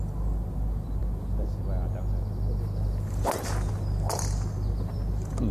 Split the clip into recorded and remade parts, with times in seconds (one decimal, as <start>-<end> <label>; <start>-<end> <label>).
0.0-5.5 recorded